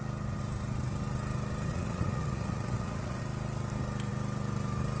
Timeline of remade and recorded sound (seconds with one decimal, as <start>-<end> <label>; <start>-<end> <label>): 0.0-1.7 recorded; 1.7-3.2 remade; 3.2-5.0 recorded